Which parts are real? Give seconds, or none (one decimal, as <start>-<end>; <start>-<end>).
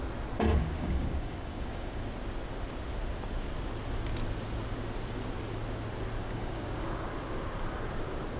0.0-0.6; 2.1-6.2; 7.1-8.4